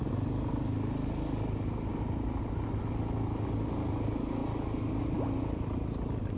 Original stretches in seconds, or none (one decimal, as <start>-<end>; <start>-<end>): 0.0-6.4